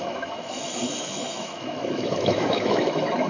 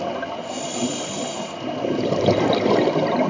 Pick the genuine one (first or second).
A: second